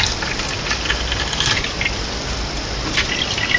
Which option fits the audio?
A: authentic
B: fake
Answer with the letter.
A